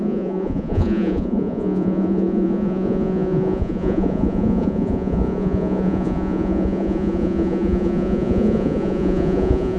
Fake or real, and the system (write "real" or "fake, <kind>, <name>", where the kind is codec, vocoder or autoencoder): fake, vocoder, Vocos